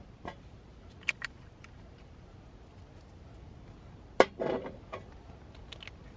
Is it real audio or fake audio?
real